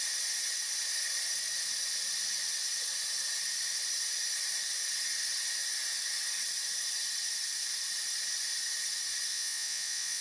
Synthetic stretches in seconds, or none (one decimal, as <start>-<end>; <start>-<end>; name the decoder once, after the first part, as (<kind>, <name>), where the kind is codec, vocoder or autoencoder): 9.3-10.2 (vocoder, Vocos)